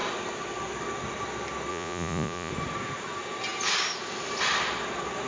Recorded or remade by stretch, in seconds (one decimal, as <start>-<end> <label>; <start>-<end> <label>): 0.0-1.7 recorded; 1.7-2.5 remade; 2.5-5.3 recorded